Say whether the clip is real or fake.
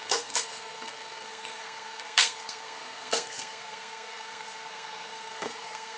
fake